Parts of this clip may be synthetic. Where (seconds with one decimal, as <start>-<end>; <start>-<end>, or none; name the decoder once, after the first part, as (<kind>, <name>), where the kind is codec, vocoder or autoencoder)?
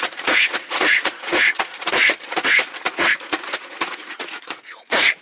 0.0-5.2 (vocoder, Vocos)